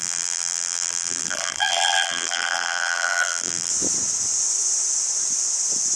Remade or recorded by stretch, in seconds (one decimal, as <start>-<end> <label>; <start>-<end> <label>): 0.0-3.7 remade; 3.7-6.0 recorded

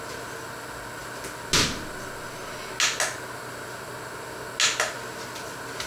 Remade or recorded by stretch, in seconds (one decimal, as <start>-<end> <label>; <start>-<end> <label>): 0.0-5.9 recorded